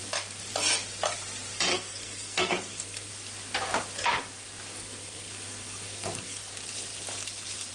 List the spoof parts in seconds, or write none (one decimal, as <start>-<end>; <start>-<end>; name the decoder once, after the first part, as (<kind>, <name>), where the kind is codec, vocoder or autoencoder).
1.7-3.1 (codec, SNAC); 4.8-6.5